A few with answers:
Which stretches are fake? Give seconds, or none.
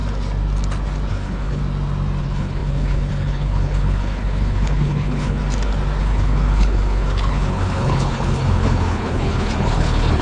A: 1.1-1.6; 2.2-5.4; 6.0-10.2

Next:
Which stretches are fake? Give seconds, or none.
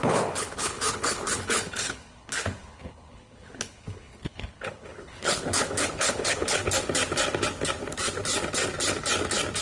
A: 0.0-6.6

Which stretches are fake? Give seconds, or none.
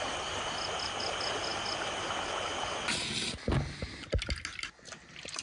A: none